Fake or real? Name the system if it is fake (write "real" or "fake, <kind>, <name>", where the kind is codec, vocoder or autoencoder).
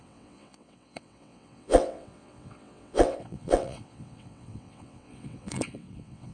fake, vocoder, WaveNeXt